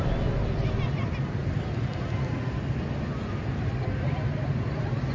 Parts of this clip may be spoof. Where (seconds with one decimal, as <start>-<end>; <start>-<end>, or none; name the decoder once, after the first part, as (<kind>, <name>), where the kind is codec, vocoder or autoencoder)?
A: none